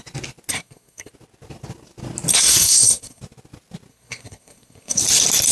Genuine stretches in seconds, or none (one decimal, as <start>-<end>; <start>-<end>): 0.0-0.5; 1.1-2.3; 3.2-3.9; 5.0-5.5